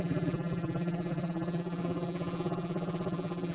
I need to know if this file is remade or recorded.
remade